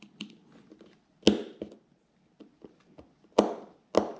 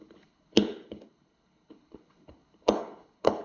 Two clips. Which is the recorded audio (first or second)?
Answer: first